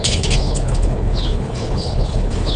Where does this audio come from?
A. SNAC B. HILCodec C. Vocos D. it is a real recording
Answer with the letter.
B